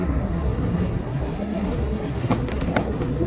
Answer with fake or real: fake